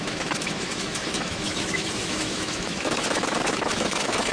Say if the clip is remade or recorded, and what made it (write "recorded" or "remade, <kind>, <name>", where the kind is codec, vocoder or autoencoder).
remade, autoencoder, DAC-VAE